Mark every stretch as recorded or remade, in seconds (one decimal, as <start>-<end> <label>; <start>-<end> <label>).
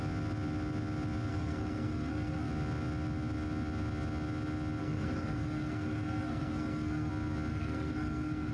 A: 0.0-1.3 recorded; 1.3-2.5 remade; 2.5-4.8 recorded; 4.8-7.1 remade; 7.1-7.5 recorded; 7.5-8.5 remade